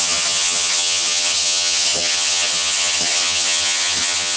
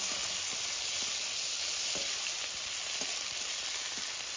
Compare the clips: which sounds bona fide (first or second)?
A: second